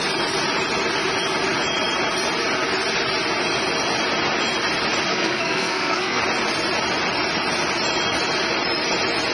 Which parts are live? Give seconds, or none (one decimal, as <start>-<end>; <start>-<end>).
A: 0.0-5.1; 6.2-9.3